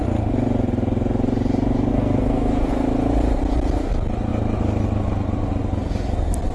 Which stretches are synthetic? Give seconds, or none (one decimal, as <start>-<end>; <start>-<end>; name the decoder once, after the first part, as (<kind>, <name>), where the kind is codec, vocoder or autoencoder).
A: 1.9-2.7 (codec, SNAC)